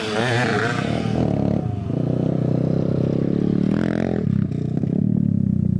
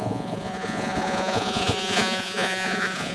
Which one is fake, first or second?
second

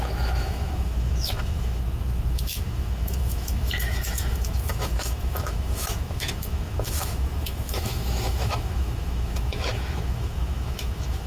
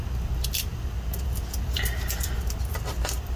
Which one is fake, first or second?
first